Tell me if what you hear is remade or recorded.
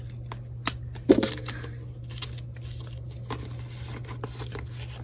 recorded